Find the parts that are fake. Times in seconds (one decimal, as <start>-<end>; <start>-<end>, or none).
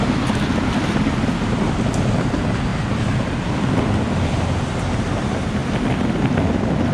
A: none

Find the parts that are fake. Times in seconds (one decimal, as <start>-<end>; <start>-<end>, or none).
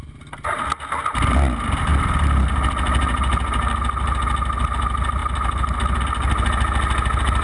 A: none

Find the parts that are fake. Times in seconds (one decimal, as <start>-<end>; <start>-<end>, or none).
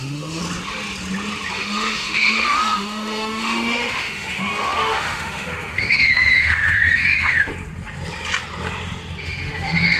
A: 0.0-0.4; 1.5-7.5; 9.2-10.0